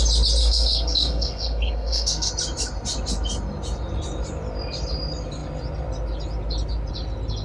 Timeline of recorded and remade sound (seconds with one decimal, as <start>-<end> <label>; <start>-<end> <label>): 0.0-0.4 recorded; 0.4-2.3 remade; 2.3-7.4 recorded